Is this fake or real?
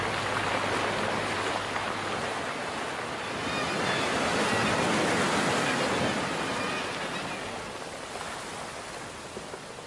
real